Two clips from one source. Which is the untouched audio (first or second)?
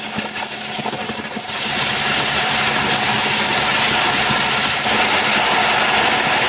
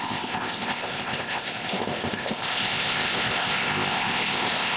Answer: first